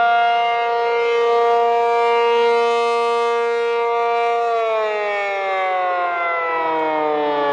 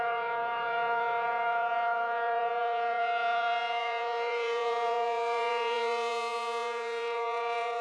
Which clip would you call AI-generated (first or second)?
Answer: second